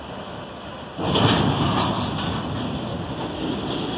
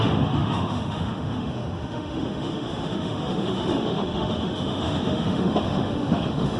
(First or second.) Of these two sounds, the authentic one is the first